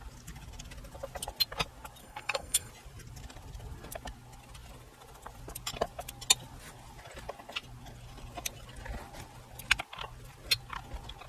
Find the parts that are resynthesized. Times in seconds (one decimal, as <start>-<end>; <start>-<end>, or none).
2.0-2.7